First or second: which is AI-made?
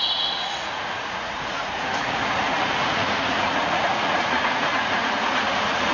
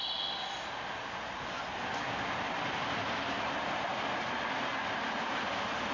first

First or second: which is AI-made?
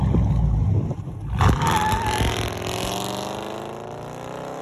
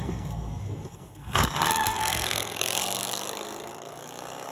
second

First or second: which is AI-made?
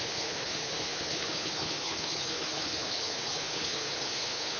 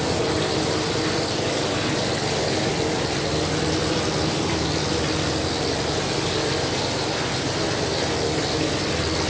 first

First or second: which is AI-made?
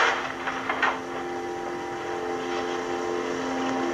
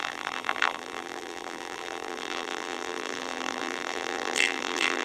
second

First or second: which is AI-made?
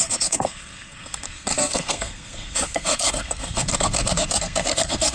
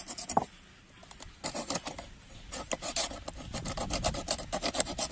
first